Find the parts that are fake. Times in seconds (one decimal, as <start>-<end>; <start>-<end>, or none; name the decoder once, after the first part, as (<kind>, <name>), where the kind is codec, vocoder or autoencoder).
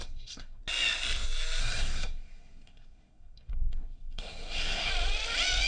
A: 0.0-0.6 (codec, SNAC); 1.6-4.9